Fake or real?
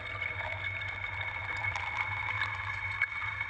real